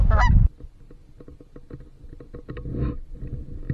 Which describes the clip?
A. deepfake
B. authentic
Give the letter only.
B